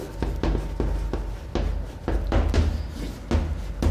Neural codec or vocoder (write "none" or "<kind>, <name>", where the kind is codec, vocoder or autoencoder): none